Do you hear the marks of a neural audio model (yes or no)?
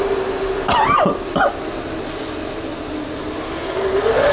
no